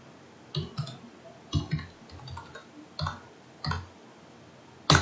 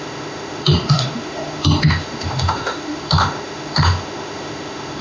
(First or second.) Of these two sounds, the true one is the first